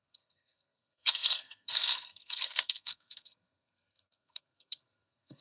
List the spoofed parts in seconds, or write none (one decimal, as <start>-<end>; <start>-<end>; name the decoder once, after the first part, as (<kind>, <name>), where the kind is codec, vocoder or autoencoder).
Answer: 0.0-5.4 (codec, SNAC)